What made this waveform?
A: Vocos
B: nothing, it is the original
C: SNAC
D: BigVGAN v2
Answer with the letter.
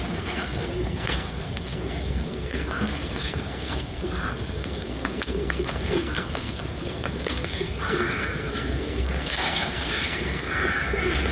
C